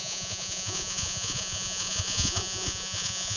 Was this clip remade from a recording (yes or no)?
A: yes